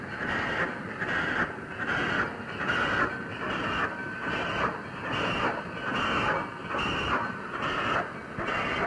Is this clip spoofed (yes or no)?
no